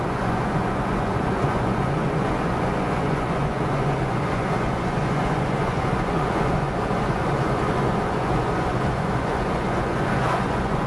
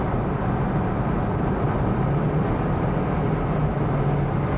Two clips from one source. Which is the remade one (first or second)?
first